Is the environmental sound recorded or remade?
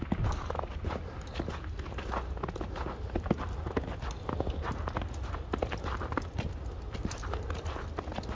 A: recorded